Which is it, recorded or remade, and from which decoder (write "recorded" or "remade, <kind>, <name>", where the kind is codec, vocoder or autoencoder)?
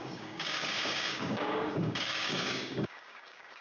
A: remade, codec, DAC